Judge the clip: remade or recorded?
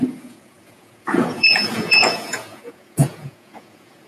remade